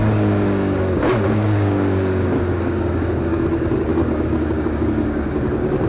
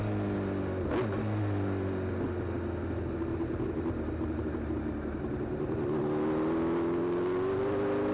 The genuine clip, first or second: second